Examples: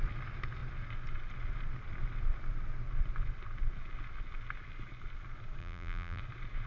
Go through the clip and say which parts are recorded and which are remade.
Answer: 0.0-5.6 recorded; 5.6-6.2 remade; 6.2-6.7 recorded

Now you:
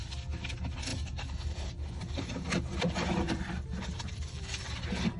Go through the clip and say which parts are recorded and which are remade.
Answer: 0.0-0.5 recorded; 0.5-5.2 remade